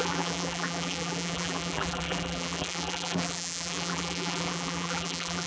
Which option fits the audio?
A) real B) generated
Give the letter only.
B